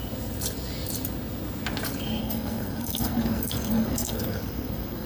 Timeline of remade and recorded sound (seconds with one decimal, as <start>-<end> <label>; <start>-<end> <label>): 0.0-2.2 recorded; 2.2-5.1 remade